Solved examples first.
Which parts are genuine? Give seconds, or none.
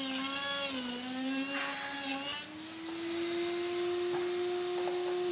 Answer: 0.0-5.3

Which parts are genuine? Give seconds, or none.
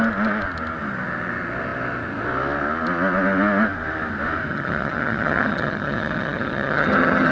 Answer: 0.0-4.5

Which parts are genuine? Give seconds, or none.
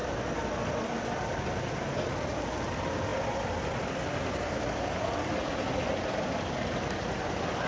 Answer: 0.0-7.7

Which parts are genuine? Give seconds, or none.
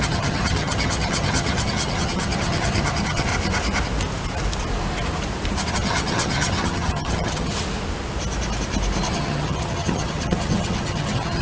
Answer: 3.3-5.7; 7.5-9.1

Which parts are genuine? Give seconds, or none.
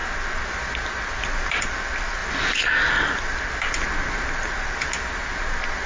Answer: 0.0-5.9